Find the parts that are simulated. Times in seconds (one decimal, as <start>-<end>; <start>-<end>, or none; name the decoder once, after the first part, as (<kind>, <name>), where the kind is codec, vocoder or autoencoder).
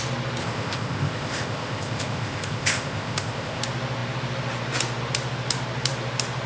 0.4-3.6 (codec, ZipCodec)